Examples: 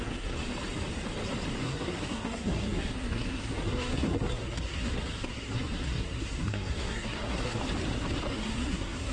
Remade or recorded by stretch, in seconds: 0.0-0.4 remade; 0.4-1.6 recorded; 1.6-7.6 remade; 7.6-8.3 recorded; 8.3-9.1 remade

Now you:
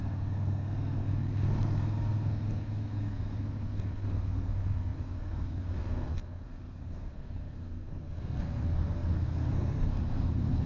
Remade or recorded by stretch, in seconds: 0.0-10.7 remade

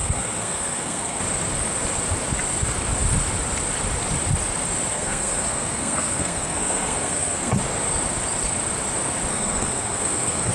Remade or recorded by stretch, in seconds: 0.0-1.2 remade; 1.2-4.9 recorded; 4.9-7.5 remade; 7.5-9.3 recorded; 9.3-10.5 remade

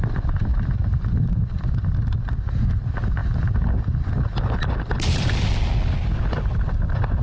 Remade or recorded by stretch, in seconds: 0.0-7.2 recorded

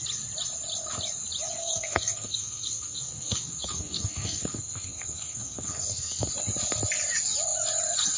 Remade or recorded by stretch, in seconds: 0.0-1.6 recorded; 1.6-6.3 remade; 6.3-8.2 recorded

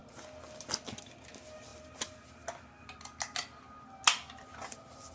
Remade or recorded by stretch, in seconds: 0.0-5.1 recorded

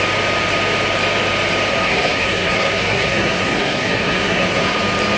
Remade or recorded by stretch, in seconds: 0.0-1.7 recorded; 1.7-4.8 remade; 4.8-5.2 recorded